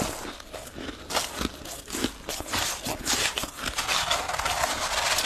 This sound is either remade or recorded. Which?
recorded